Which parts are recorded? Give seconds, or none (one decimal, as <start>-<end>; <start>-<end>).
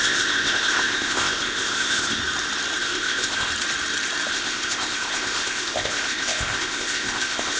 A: 2.2-2.8; 3.5-4.3